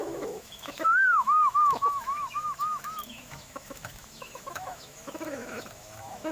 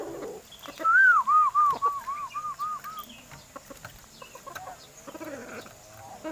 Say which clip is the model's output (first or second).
first